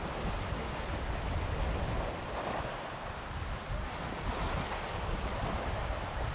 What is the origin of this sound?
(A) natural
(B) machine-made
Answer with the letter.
A